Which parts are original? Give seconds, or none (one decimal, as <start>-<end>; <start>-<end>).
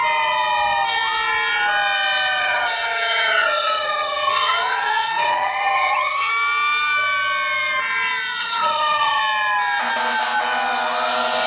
0.0-2.4; 6.3-8.4; 9.2-11.5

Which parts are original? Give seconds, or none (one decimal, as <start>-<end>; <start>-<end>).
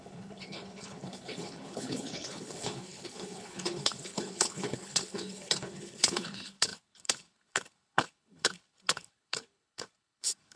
none